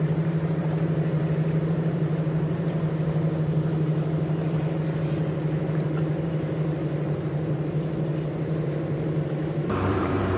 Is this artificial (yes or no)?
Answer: yes